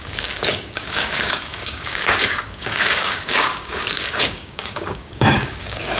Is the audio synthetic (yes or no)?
yes